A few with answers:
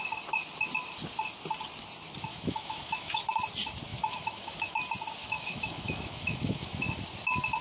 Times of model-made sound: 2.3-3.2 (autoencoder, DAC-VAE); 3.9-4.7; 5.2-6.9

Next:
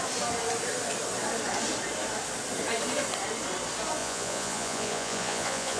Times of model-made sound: 4.0-5.8 (vocoder, Vocos)

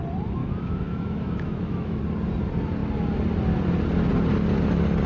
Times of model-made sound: 0.4-2.0 (autoencoder, DAC-VAE)

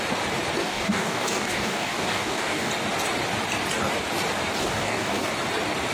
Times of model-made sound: 0.6-2.7 (codec, DAC); 4.6-5.3

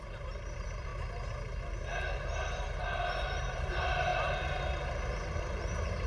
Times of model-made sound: 0.0-0.9 (vocoder, BigVGAN v2); 3.4-4.1; 5.3-6.1

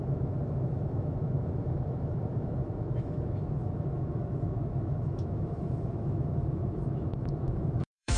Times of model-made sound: 0.0-8.2 (autoencoder, DAC-VAE)

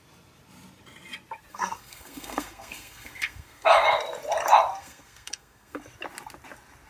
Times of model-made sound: 1.5-3.7 (codec, SNAC); 4.7-5.8